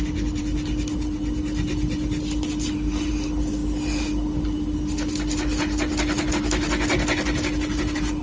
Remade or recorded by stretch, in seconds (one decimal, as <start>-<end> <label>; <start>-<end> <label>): 0.0-8.2 recorded